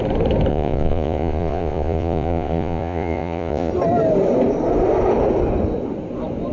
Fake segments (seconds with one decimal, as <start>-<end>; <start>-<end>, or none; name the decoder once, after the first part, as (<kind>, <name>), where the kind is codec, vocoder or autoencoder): 0.5-3.7 (vocoder, Vocos)